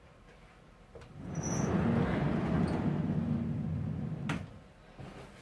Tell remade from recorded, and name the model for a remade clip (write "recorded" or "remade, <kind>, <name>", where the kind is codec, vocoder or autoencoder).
recorded